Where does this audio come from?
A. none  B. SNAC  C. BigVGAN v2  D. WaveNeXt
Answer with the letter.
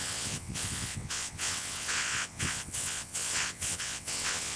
D